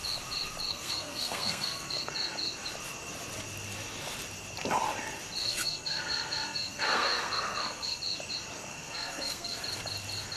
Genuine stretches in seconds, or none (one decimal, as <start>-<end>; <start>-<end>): 0.0-0.7; 2.1-5.4; 8.0-8.7; 9.6-10.4